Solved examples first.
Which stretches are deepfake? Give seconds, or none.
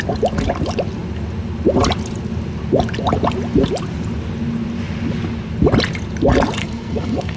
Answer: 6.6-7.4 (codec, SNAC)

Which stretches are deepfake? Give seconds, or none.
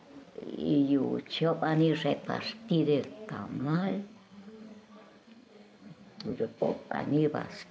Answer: 3.5-7.0 (codec, SNAC)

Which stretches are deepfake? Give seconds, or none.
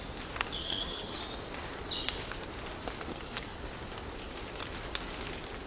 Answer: 0.6-1.2 (codec, SNAC); 3.1-3.7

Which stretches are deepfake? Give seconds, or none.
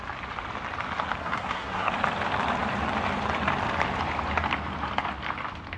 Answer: 1.2-1.9 (codec, SNAC)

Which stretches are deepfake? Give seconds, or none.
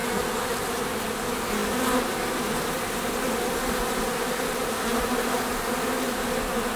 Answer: none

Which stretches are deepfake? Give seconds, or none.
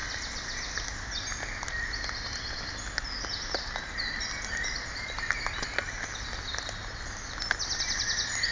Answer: none